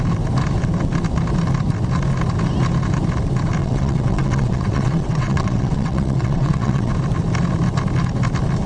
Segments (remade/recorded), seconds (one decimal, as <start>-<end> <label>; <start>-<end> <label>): 0.0-3.6 recorded; 3.6-6.9 remade; 6.9-8.7 recorded